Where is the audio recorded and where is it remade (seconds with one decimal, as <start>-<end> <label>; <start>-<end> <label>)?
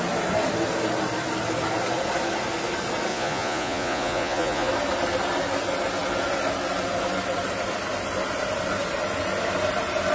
0.0-3.1 recorded; 3.1-4.7 remade; 4.7-10.1 recorded